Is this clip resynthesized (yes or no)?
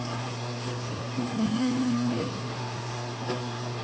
yes